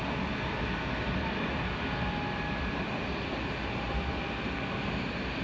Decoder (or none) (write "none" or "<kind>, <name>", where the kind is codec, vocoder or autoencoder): none